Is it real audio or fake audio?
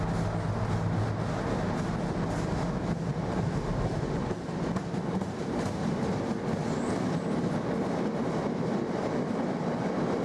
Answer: real